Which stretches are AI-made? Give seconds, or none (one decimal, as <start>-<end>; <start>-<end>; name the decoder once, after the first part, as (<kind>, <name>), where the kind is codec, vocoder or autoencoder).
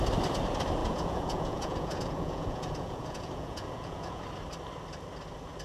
0.8-4.2 (vocoder, Vocos)